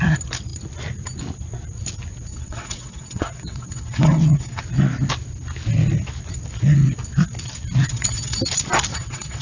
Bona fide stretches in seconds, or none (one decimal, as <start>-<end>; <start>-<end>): 0.0-2.3; 4.6-7.9; 8.4-8.9